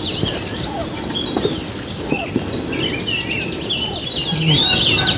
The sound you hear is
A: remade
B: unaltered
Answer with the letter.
B